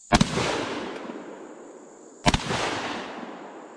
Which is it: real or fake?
real